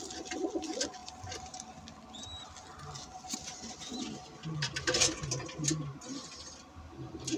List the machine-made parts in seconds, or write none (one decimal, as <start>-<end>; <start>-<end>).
none